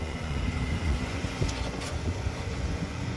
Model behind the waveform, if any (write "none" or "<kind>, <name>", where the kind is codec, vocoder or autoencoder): vocoder, Vocos